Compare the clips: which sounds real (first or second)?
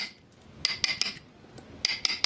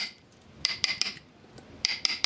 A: first